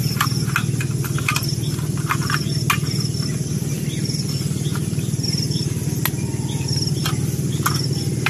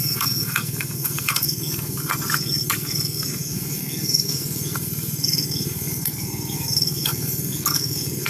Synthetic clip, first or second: second